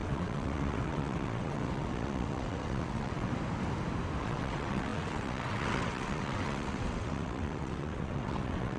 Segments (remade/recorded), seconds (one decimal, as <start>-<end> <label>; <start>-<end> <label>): 0.0-3.3 remade; 3.3-4.2 recorded; 4.2-8.8 remade